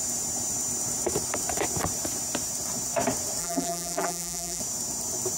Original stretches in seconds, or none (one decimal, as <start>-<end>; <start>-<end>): 0.0-3.4; 4.6-5.4